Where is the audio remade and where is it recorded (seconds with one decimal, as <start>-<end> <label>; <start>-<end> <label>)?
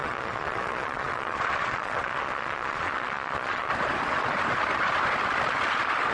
0.0-3.7 remade; 3.7-6.1 recorded